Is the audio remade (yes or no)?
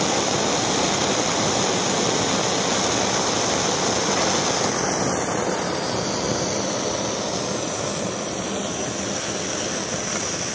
no